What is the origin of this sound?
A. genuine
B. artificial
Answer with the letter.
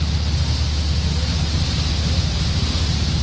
A